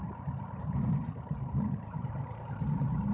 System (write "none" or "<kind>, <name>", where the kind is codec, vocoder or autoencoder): vocoder, BigVGAN v2